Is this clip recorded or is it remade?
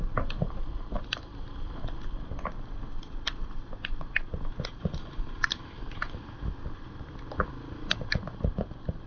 recorded